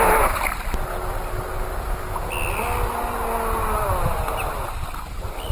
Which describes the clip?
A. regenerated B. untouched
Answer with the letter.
B